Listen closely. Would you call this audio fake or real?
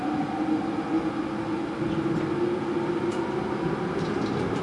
real